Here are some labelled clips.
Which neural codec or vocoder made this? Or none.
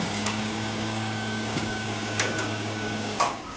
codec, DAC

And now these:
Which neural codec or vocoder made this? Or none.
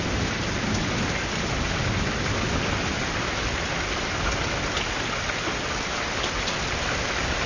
none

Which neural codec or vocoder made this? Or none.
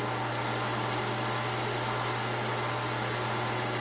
none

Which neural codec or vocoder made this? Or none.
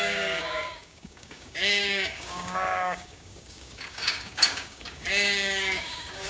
codec, DAC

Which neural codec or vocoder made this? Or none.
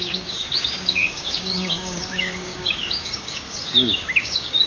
codec, DAC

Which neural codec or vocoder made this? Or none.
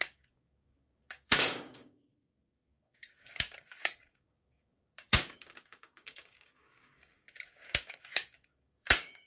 codec, DAC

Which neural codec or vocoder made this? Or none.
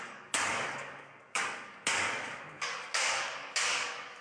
codec, DAC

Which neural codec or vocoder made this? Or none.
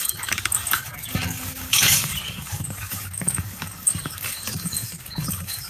codec, DAC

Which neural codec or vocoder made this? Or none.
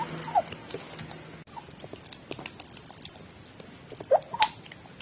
none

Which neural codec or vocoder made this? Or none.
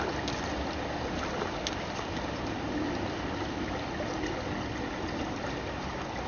none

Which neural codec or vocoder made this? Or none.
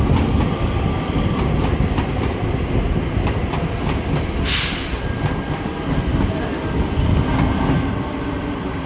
none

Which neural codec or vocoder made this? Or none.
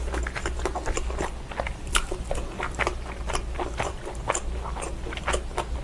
none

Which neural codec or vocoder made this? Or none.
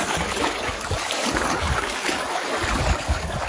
codec, DAC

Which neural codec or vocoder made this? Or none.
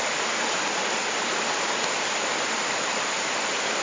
none